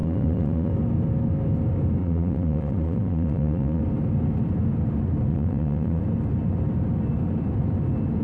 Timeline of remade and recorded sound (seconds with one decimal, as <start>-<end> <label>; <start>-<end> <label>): 0.0-0.7 remade; 0.7-2.0 recorded; 2.0-3.8 remade; 3.8-5.3 recorded; 5.3-6.0 remade; 6.0-8.2 recorded